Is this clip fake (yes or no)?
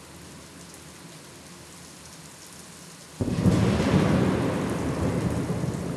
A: no